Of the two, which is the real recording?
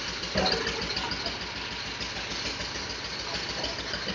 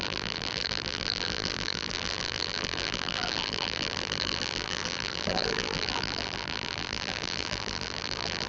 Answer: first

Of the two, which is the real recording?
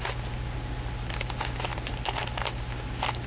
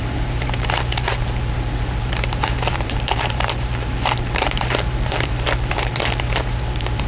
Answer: first